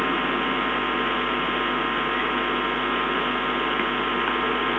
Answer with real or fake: fake